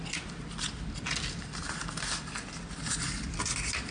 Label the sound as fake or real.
real